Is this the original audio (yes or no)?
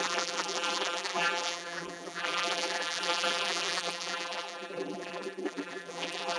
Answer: no